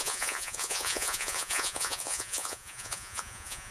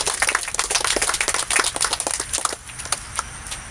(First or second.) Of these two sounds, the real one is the second